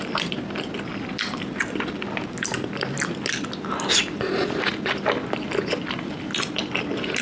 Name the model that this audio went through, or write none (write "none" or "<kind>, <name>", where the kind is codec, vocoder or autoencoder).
none